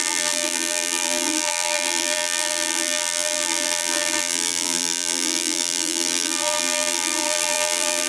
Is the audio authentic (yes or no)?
no